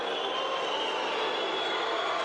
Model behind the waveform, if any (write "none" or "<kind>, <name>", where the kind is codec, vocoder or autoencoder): none